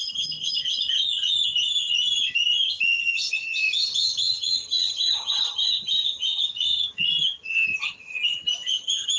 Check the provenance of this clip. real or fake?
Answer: fake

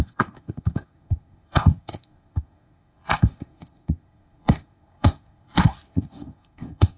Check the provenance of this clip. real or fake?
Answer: fake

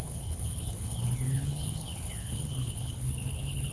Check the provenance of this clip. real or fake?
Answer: fake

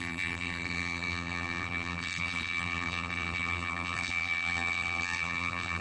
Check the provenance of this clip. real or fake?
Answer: fake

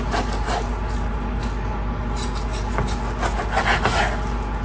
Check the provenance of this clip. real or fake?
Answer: real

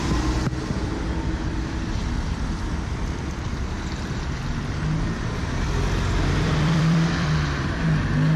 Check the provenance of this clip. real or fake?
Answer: fake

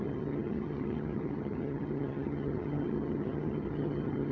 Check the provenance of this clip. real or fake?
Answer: fake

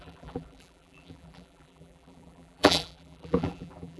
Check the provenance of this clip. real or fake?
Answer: fake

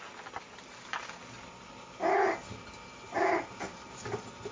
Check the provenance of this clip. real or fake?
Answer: real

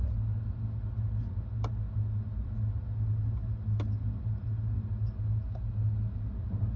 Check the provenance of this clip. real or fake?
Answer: real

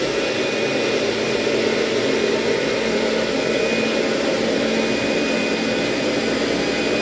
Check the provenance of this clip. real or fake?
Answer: real